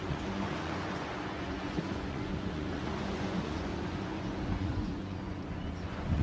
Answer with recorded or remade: remade